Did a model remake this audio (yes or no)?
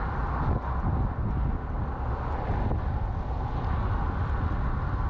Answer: no